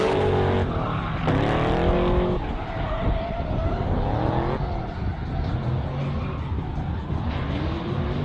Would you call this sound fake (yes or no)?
no